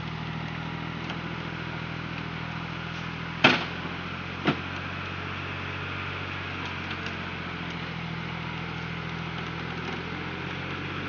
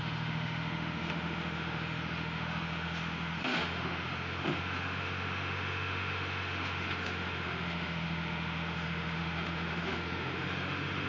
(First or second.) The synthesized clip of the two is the second